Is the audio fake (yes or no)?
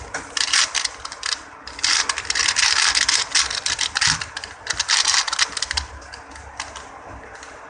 no